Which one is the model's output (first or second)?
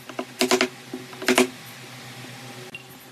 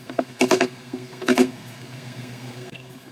second